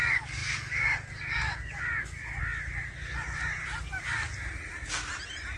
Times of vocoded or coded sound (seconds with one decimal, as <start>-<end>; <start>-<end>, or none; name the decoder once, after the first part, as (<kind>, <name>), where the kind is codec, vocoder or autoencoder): 0.0-2.4 (codec, DAC)